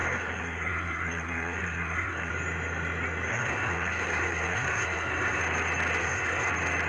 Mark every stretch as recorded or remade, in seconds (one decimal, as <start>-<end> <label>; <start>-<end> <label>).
0.0-2.3 remade; 2.3-3.3 recorded; 3.3-5.4 remade; 5.4-6.0 recorded; 6.0-6.5 remade; 6.5-6.9 recorded